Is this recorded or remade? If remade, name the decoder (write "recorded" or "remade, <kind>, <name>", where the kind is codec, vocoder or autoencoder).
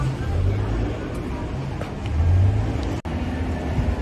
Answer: recorded